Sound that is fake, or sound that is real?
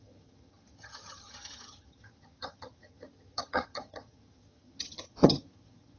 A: fake